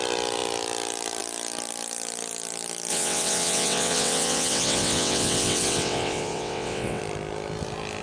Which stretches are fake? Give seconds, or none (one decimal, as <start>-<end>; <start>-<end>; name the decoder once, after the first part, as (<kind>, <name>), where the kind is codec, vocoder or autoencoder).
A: 2.9-7.0 (vocoder, WaveNeXt)